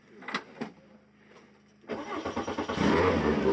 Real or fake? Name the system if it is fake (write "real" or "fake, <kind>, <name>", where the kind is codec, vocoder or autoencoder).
real